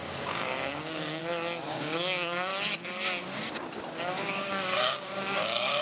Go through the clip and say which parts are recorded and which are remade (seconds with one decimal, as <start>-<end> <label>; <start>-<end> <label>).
0.0-1.2 remade; 1.2-1.7 recorded; 1.7-2.5 remade; 2.5-4.1 recorded; 4.1-5.8 remade